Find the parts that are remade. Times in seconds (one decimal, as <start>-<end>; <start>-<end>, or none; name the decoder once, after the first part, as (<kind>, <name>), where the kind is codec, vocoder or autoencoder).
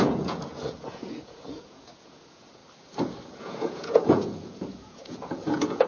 0.0-2.6 (vocoder, Vocos); 3.4-5.9